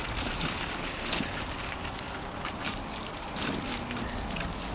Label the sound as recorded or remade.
recorded